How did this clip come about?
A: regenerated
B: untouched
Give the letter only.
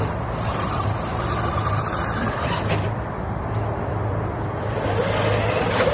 A